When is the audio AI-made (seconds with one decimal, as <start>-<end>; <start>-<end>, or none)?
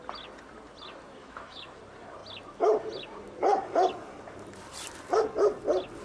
1.2-1.8